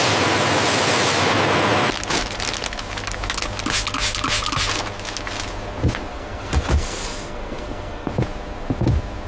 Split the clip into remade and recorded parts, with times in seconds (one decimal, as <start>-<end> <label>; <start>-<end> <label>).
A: 0.0-6.1 recorded; 6.1-8.1 remade; 8.1-9.3 recorded